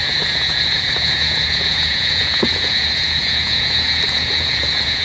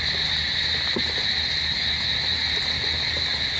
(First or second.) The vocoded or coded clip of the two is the first